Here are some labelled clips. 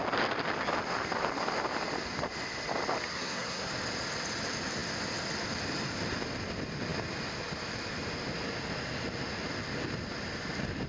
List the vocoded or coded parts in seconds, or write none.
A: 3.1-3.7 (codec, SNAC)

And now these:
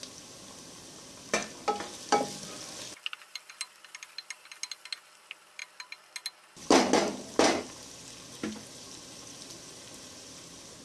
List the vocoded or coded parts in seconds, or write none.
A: none

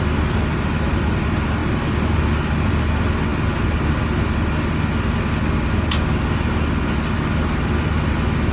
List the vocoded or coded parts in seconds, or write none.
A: none

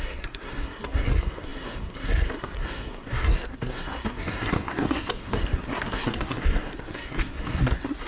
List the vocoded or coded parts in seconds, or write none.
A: 0.0-8.1 (codec, SNAC)

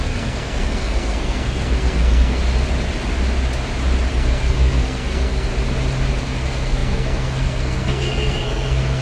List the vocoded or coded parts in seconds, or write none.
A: 0.0-2.4 (codec, SNAC); 4.1-5.5; 6.2-9.0

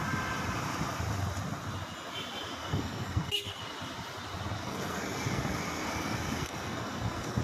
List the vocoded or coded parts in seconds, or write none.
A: 2.6-3.6 (codec, SNAC); 4.6-7.4